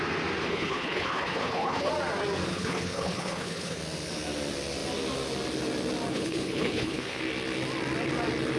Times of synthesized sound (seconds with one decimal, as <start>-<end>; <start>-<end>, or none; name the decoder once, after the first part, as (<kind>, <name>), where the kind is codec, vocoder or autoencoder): 0.4-1.9 (codec, HILCodec); 2.5-3.8; 6.1-7.2